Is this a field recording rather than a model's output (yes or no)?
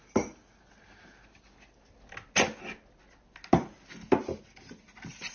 yes